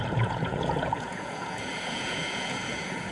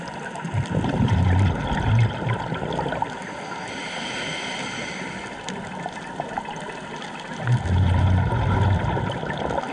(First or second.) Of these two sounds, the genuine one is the second